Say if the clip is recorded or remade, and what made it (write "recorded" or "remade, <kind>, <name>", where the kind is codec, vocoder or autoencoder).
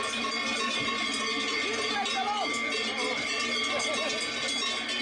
recorded